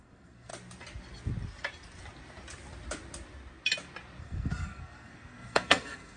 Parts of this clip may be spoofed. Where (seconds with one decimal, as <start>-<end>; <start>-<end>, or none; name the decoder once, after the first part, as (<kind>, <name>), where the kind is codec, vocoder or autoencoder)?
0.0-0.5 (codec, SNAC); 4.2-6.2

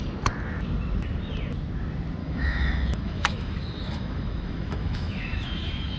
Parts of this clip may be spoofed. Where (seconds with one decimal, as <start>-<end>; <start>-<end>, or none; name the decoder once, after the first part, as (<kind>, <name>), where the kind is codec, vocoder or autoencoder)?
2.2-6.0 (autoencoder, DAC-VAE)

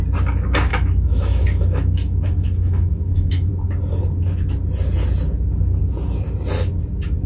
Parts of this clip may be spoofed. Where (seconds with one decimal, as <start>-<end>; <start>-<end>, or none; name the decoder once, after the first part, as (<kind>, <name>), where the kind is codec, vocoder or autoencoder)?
0.7-3.5 (autoencoder, DAC-VAE)

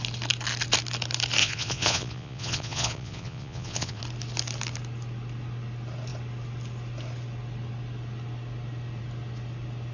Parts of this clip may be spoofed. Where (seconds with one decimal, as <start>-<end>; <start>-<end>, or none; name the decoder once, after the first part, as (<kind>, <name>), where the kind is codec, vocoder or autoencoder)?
1.4-4.0 (vocoder, Vocos)

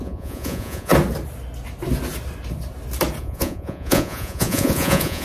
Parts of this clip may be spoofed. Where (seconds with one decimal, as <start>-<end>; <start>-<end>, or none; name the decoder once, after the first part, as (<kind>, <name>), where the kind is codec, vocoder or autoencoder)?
0.0-0.9 (vocoder, Vocos); 3.2-5.2

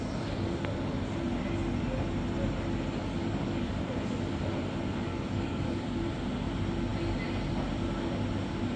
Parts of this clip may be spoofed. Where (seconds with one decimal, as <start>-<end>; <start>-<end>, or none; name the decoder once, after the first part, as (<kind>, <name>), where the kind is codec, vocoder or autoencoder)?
3.0-3.8 (codec, DAC); 5.1-6.0